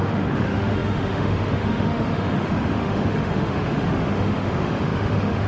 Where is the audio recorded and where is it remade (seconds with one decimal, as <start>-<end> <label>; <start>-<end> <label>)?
0.0-5.5 remade